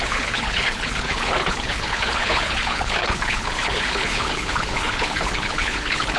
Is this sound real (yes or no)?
no